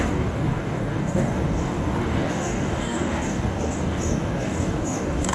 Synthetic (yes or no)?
yes